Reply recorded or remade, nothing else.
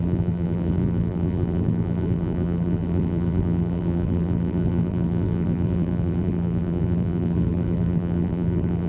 remade